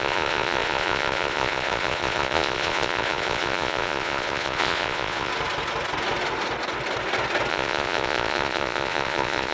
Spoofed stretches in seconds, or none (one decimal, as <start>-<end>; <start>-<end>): 0.0-5.3; 7.5-9.5